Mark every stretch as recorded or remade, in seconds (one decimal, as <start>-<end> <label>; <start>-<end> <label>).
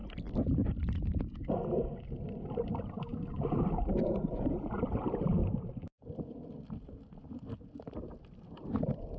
0.0-9.2 recorded